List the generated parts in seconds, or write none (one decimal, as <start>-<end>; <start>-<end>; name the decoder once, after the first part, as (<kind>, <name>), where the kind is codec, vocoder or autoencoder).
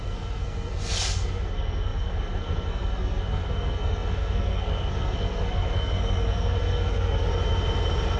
0.0-7.3 (codec, SNAC)